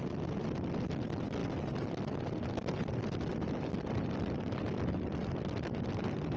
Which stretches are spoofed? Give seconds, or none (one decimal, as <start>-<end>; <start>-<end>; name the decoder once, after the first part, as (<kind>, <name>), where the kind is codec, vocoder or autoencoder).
5.2-6.0 (vocoder, BigVGAN v2)